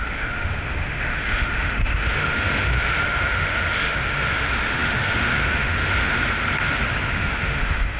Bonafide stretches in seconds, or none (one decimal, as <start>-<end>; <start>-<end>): 6.2-7.1

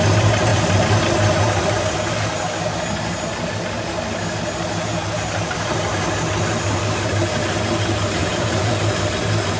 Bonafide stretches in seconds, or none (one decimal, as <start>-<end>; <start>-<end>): 0.0-8.2; 8.8-9.6